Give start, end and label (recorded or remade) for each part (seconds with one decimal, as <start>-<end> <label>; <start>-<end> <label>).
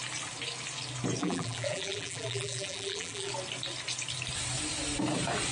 0.0-1.2 recorded; 1.2-3.3 remade; 3.3-5.5 recorded